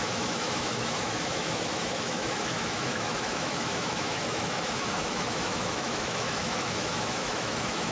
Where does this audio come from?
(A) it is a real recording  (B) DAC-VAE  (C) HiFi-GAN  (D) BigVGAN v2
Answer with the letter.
B